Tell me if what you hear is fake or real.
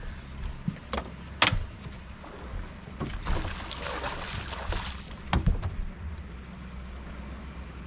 real